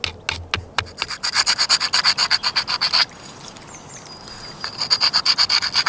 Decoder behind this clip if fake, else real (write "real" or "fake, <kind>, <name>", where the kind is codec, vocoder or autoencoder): real